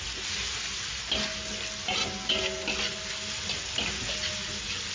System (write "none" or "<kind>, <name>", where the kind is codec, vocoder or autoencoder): none